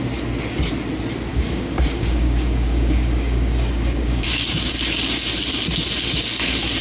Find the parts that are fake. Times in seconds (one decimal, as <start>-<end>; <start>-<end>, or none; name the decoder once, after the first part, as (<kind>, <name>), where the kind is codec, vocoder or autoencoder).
1.3-4.7 (codec, DAC)